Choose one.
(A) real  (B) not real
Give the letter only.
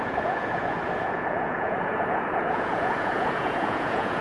B